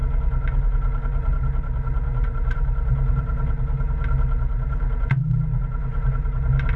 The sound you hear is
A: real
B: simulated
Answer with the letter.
A